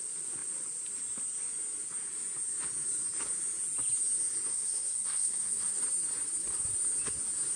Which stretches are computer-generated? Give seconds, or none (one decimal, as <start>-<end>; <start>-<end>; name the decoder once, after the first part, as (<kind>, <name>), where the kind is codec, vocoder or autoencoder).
4.5-5.8 (codec, SNAC)